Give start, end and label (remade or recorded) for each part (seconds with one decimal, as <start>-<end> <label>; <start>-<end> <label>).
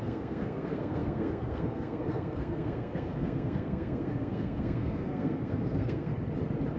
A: 0.0-6.1 remade; 6.1-6.8 recorded